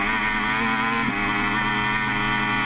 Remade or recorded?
recorded